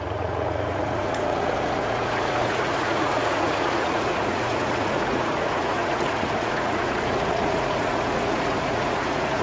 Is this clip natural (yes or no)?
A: no